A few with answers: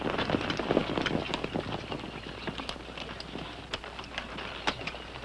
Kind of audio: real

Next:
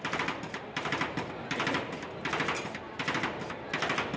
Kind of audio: real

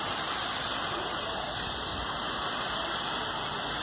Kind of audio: real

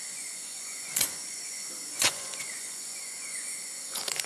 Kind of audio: fake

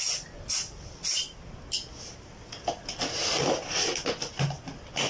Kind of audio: real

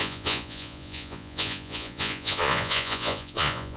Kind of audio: fake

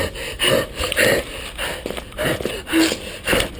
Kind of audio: real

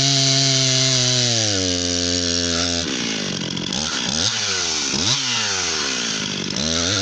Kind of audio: real